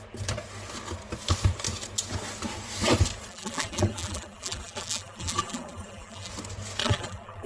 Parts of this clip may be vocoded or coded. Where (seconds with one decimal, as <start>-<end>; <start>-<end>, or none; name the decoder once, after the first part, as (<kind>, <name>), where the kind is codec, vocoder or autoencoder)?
3.3-6.3 (vocoder, BigVGAN v2); 6.8-7.5